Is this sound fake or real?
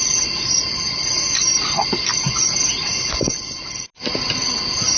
real